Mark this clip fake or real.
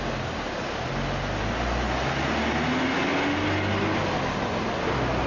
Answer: real